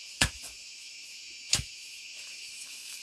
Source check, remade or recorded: remade